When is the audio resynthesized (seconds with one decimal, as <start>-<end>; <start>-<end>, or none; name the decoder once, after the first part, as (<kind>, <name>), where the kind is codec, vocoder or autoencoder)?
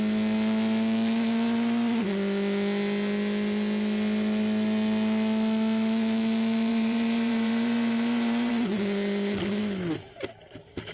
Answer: 6.7-8.5 (vocoder, BigVGAN v2)